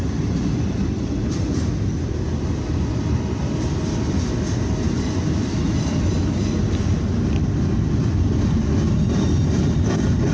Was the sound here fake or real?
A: real